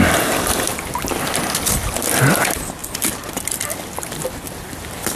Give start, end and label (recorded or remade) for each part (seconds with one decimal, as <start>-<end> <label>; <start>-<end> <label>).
0.0-5.2 recorded